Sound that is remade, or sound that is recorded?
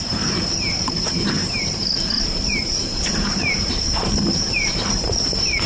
remade